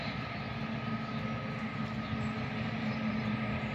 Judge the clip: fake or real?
real